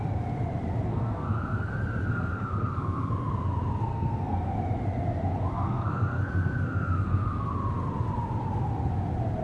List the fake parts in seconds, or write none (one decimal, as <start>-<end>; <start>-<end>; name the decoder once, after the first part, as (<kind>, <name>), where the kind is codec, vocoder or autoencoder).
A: 0.9-1.7 (codec, SNAC); 2.1-3.1; 3.9-4.5; 5.5-7.5